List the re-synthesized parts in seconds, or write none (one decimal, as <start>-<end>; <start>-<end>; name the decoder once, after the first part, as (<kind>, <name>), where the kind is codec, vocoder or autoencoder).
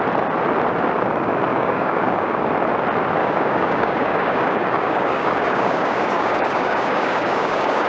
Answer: 1.5-2.5 (codec, DAC); 3.2-7.9